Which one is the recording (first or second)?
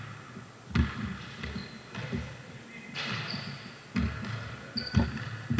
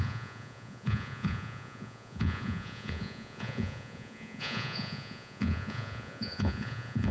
first